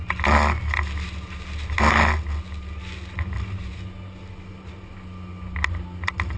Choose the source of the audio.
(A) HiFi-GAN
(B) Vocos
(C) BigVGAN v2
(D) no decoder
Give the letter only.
D